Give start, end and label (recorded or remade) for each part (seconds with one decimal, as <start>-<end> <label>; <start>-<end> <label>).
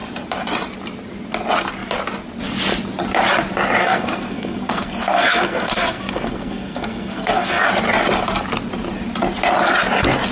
0.0-3.8 recorded; 3.8-7.7 remade; 7.7-10.3 recorded